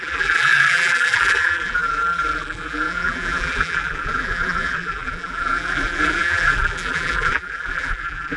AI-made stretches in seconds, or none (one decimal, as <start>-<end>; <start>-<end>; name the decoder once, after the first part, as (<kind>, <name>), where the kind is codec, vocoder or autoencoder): 0.0-8.4 (vocoder, BigVGAN v2)